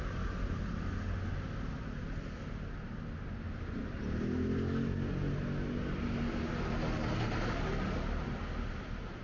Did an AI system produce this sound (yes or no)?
no